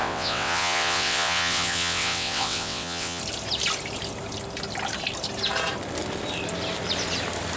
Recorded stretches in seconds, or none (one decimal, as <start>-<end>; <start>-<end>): 3.2-7.6

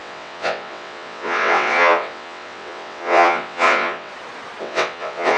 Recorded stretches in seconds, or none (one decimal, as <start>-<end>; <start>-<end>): 4.1-4.6

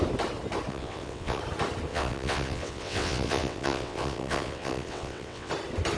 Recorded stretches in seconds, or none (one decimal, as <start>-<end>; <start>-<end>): 0.0-0.7; 1.4-1.9; 5.5-6.0

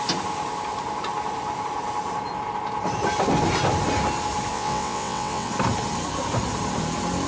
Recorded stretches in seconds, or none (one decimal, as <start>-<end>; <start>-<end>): 0.0-4.5; 5.5-7.3

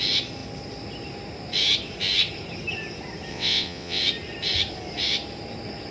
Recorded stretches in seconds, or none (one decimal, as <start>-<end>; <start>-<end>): 0.0-3.3; 4.0-5.9

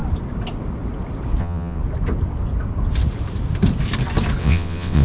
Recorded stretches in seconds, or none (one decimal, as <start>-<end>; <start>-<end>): 0.0-1.4; 1.8-4.4